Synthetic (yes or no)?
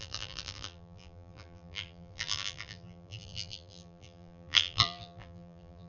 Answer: yes